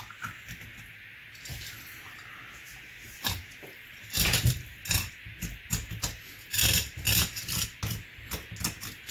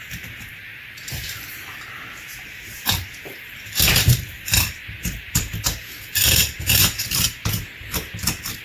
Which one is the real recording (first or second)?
first